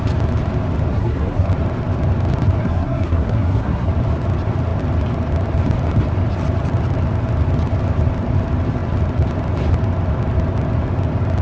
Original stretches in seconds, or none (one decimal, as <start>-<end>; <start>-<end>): 0.0-0.9; 1.5-2.6; 3.9-11.4